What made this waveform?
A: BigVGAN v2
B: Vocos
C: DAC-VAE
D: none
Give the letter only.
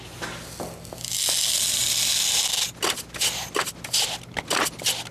D